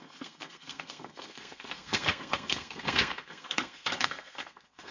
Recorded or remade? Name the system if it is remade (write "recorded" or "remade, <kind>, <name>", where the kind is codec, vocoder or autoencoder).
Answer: remade, codec, SNAC